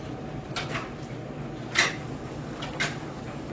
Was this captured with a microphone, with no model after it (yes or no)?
yes